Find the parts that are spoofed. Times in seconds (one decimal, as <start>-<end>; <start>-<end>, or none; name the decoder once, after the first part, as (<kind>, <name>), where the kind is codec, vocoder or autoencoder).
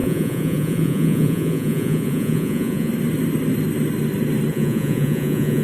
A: 0.0-2.9 (vocoder, Vocos); 4.5-5.6